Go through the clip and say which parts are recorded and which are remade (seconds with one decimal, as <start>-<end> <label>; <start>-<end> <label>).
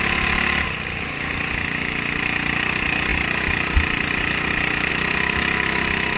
0.0-6.2 recorded